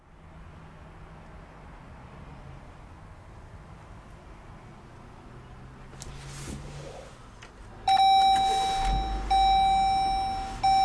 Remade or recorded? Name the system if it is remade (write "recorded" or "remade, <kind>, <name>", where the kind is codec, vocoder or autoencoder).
recorded